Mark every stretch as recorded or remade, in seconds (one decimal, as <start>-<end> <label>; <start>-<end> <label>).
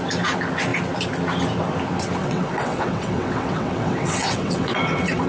0.0-2.2 recorded; 2.2-5.3 remade